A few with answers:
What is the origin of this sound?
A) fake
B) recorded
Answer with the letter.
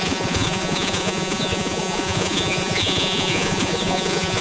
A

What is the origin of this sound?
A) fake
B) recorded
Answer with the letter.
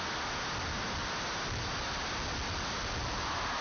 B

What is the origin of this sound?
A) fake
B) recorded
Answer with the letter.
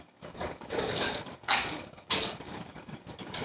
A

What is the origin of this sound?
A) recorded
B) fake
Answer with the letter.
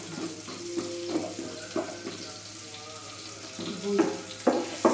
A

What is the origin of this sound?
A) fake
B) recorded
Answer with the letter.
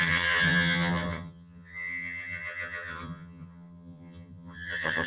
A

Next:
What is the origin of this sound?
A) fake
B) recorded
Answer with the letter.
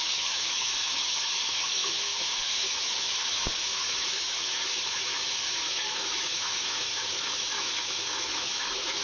A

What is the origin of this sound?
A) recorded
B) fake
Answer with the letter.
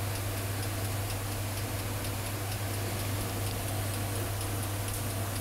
A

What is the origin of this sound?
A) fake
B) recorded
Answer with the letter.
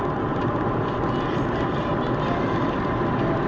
B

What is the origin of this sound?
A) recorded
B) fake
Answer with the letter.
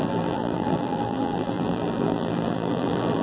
B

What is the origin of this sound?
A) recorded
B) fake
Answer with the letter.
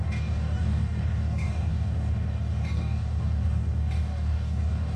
B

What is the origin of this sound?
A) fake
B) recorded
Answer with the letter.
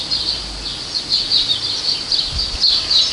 B